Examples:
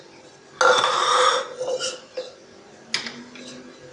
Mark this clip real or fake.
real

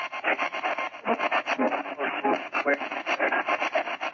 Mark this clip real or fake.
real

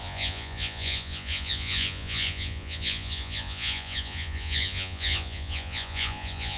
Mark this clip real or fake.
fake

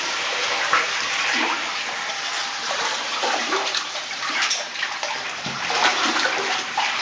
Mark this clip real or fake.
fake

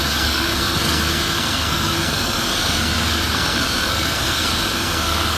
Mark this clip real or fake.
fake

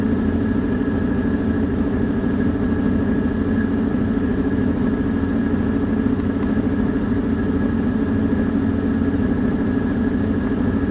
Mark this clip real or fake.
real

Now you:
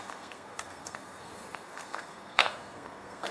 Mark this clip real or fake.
fake